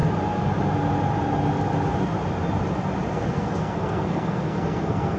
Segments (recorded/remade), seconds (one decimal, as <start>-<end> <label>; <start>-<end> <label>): 0.0-3.1 recorded; 3.1-5.2 remade

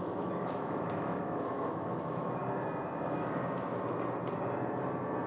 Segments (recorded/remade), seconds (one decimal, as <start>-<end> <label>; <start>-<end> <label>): 0.0-2.4 remade; 2.4-5.3 recorded

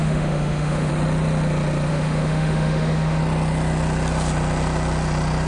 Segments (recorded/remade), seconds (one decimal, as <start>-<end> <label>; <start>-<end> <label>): 0.0-0.9 remade; 0.9-1.9 recorded; 1.9-3.2 remade; 3.2-5.5 recorded

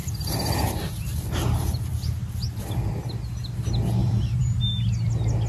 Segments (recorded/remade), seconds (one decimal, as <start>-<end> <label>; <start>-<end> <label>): 0.0-4.0 recorded; 4.0-4.6 remade; 4.6-5.5 recorded

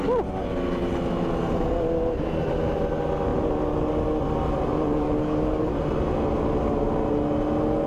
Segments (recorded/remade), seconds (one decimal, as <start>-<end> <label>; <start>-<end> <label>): 0.0-4.9 recorded; 4.9-5.7 remade; 5.7-7.9 recorded

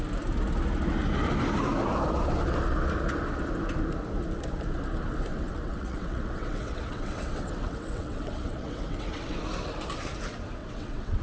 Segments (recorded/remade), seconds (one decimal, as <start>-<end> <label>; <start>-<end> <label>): 0.0-5.3 recorded; 5.3-9.4 remade; 9.4-10.6 recorded; 10.6-11.2 remade

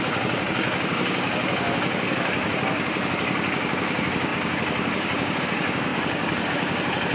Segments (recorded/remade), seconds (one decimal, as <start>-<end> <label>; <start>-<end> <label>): 0.0-7.1 remade